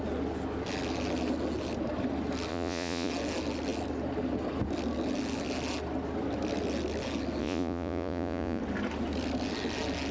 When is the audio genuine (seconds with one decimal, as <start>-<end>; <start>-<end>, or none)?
0.0-2.5; 3.1-7.4; 8.6-10.1